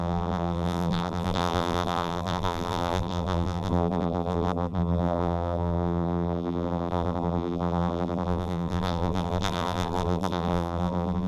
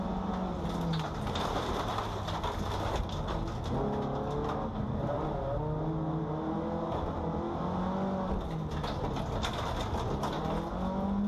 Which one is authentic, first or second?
second